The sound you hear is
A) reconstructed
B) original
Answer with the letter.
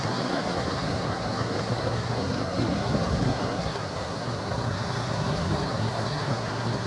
A